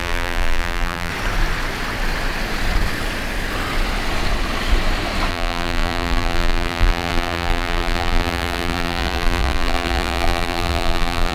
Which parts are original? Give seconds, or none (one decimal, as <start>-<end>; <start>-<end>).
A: 1.1-5.3